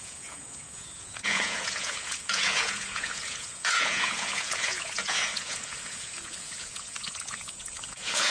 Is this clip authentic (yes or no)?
no